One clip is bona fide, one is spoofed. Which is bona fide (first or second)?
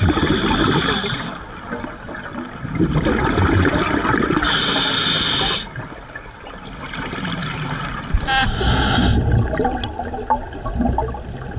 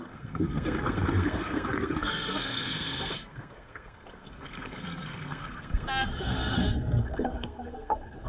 first